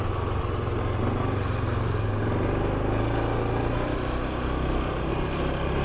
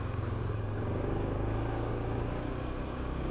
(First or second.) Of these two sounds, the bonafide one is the first